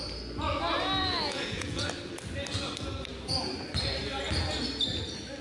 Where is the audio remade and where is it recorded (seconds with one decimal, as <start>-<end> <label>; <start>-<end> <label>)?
0.0-1.0 recorded; 1.0-1.9 remade; 1.9-5.4 recorded

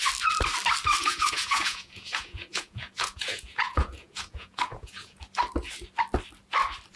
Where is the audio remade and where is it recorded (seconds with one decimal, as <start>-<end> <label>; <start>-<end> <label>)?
0.0-1.0 recorded; 1.0-5.2 remade; 5.2-7.0 recorded

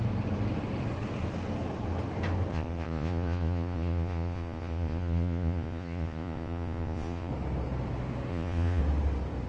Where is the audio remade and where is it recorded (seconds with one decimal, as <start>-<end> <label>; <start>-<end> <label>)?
0.0-2.5 recorded; 2.5-7.3 remade; 7.3-8.3 recorded; 8.3-8.8 remade; 8.8-9.5 recorded

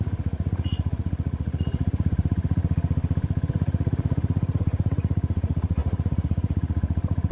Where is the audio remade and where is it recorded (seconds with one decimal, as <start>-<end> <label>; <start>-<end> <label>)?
0.0-2.6 remade; 2.6-3.5 recorded; 3.5-7.3 remade

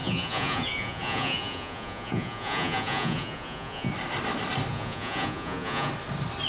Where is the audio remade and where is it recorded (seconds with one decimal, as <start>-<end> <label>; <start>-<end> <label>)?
0.0-3.9 remade; 3.9-4.7 recorded; 4.7-5.9 remade; 5.9-6.5 recorded

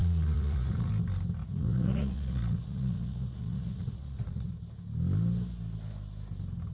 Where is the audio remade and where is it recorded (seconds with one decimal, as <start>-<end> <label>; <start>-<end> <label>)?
0.0-0.9 remade; 0.9-1.4 recorded; 1.4-4.5 remade; 4.5-6.7 recorded

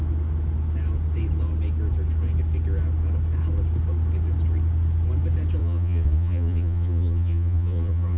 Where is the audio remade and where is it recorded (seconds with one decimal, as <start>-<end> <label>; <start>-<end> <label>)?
0.0-5.6 recorded; 5.6-8.2 remade